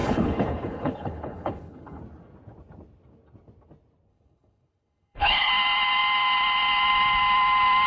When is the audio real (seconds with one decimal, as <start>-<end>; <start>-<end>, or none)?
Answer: 2.0-4.1; 5.5-7.9